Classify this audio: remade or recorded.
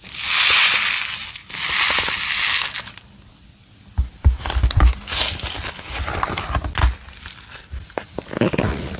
recorded